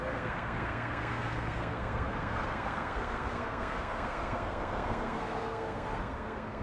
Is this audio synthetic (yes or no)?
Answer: yes